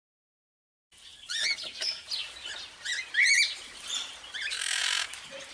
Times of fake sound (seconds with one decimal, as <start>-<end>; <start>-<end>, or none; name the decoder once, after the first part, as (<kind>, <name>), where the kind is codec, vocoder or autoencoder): none